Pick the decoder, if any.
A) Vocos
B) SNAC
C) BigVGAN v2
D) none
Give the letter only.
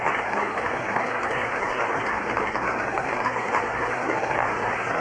B